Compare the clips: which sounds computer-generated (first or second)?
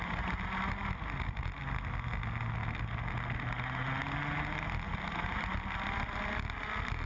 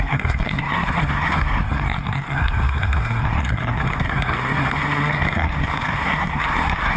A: second